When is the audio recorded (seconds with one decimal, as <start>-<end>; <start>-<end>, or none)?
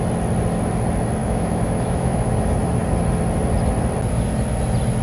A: 0.0-1.2; 2.3-5.0